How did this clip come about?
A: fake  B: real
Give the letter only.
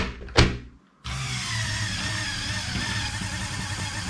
B